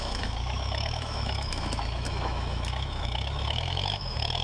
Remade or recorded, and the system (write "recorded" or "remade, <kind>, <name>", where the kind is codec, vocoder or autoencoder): remade, autoencoder, DAC-VAE